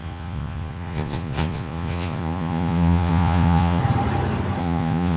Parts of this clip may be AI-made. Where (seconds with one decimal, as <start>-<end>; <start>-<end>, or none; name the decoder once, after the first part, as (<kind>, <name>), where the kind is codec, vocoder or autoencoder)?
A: 0.0-3.8 (vocoder, Vocos); 4.6-5.2